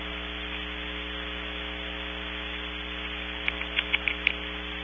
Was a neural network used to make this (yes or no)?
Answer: no